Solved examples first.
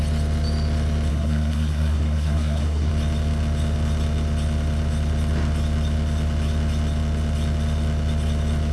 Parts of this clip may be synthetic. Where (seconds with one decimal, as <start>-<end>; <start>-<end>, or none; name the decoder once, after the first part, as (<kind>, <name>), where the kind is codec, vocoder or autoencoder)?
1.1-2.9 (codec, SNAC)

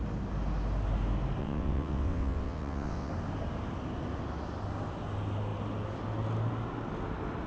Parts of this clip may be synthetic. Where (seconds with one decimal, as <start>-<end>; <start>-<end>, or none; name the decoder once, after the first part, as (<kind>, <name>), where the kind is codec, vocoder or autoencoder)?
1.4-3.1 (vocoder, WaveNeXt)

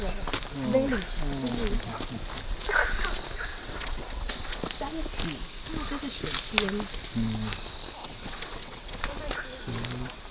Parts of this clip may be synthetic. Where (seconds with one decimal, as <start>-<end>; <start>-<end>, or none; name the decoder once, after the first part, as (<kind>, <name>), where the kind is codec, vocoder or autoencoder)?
3.5-4.6 (vocoder, WaveNeXt); 8.0-9.0

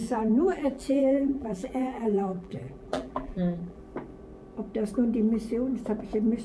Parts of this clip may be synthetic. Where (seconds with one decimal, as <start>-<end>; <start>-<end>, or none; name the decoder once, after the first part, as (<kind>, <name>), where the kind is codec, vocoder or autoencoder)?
0.0-3.8 (vocoder, BigVGAN v2)

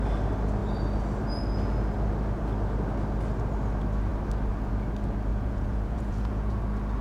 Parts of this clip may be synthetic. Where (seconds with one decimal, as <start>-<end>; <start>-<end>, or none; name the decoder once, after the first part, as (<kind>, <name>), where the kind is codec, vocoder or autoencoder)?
5.3-6.6 (vocoder, Vocos)

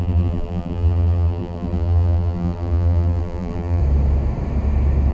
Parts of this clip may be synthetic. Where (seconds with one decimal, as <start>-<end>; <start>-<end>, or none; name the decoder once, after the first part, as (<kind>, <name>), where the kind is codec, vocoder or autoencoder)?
0.0-3.8 (vocoder, BigVGAN v2)